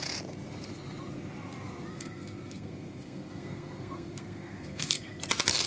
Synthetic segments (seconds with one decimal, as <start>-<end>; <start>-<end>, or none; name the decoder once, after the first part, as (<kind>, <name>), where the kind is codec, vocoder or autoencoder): 1.9-5.2 (codec, SNAC)